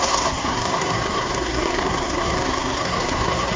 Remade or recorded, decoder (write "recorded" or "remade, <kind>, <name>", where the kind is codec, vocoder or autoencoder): remade, codec, SNAC